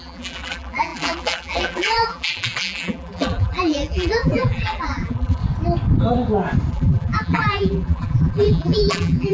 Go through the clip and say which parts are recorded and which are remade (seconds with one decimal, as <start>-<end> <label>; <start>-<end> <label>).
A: 0.0-5.4 remade; 5.4-6.7 recorded; 6.7-9.3 remade